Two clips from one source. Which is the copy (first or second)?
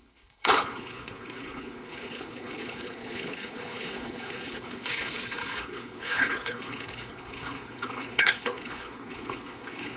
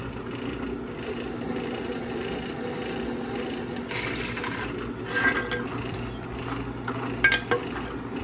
first